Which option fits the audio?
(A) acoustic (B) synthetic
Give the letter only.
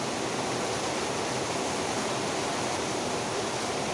A